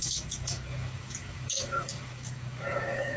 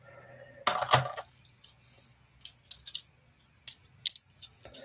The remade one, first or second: first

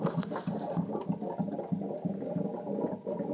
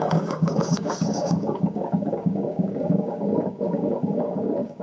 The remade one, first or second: second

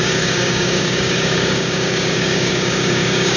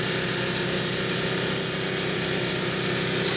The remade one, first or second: first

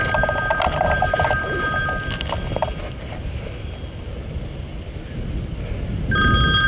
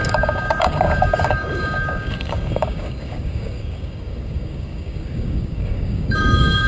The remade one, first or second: second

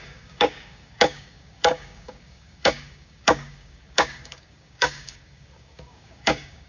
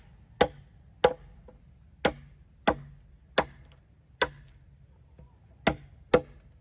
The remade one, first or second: first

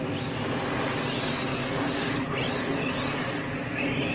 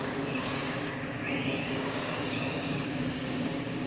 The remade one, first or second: second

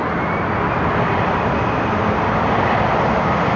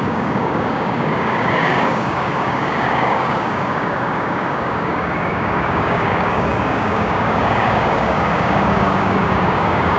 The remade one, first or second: second